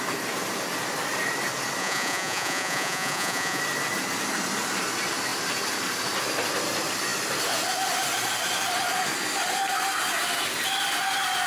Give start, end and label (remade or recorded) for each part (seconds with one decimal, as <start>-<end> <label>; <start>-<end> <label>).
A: 0.0-1.8 recorded; 1.8-3.6 remade; 3.6-11.5 recorded